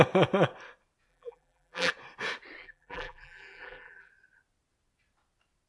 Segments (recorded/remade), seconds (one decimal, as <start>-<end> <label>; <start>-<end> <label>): 0.0-1.1 recorded; 1.1-1.9 remade; 1.9-2.6 recorded; 2.6-4.1 remade; 4.1-5.7 recorded